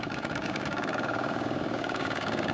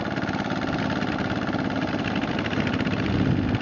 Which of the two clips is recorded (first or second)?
second